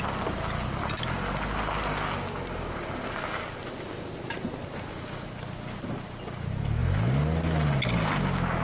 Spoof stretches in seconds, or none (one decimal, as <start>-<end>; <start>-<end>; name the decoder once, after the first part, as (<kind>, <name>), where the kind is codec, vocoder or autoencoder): none

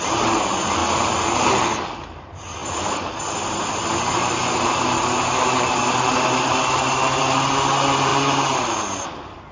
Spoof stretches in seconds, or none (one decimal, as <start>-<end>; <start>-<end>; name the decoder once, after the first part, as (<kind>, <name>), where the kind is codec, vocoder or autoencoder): 0.0-0.8 (vocoder, BigVGAN v2); 1.5-8.1

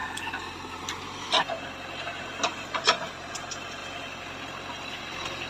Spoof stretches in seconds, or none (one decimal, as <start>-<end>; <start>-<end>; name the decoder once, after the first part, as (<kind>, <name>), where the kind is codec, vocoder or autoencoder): 3.3-3.8 (vocoder, BigVGAN v2); 5.0-5.5

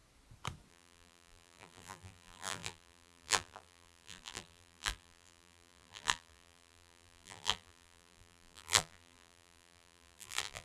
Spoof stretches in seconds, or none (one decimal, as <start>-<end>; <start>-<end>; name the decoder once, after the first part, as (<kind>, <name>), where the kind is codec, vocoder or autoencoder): 0.7-10.6 (vocoder, BigVGAN v2)

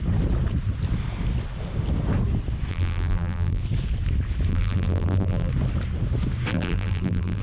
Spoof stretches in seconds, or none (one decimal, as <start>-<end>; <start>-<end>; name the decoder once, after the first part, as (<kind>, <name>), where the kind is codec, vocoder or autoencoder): 2.7-3.6 (vocoder, BigVGAN v2); 4.5-5.5; 6.5-7.4

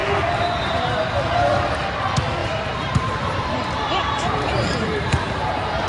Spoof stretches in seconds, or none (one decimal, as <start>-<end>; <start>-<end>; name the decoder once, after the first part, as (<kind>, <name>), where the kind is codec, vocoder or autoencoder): 2.4-5.1 (vocoder, BigVGAN v2)

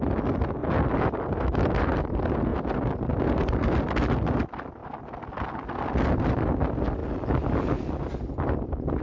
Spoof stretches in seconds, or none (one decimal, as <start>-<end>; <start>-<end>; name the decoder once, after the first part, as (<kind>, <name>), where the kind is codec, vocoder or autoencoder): none

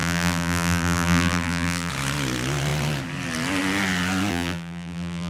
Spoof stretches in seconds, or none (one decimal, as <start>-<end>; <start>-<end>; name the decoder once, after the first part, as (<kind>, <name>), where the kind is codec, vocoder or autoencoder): 0.0-1.9 (vocoder, BigVGAN v2); 4.3-5.3